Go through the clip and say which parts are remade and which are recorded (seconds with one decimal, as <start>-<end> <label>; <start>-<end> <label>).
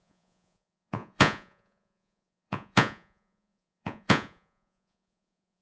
0.0-5.6 remade